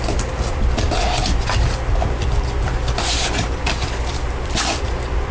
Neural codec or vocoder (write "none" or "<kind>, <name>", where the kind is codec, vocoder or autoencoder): none